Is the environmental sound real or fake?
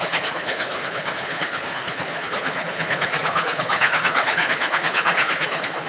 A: fake